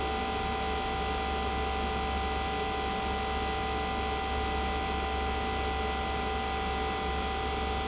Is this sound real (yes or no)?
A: yes